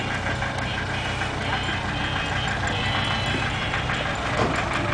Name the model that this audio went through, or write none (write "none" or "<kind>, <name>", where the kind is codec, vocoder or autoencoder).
none